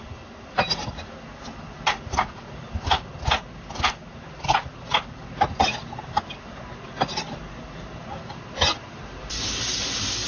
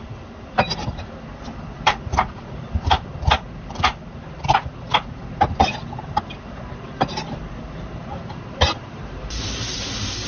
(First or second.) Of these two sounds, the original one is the first